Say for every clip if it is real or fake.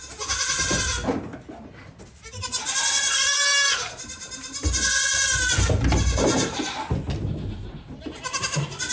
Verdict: real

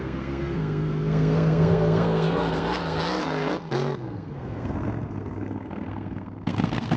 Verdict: fake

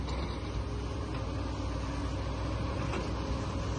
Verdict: real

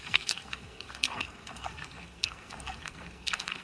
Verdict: fake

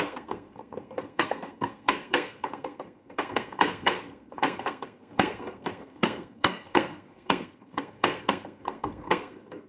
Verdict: fake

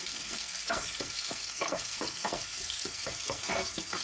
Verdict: fake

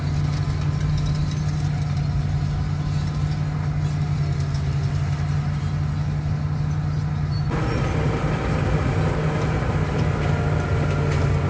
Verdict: real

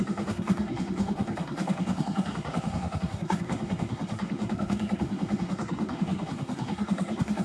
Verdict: fake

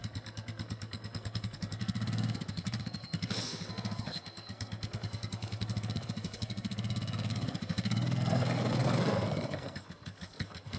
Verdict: fake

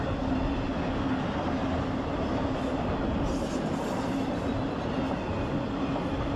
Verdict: real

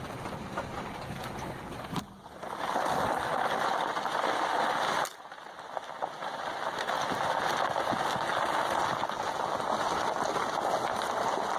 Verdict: real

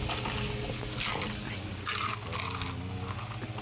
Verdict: real